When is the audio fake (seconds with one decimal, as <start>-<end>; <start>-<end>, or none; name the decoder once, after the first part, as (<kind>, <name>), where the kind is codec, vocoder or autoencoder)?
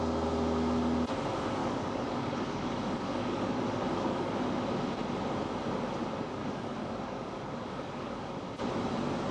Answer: 1.6-4.3 (codec, DAC); 6.4-8.4